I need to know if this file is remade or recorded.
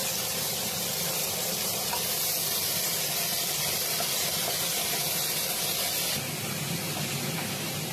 recorded